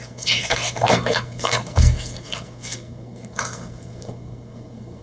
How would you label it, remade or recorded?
remade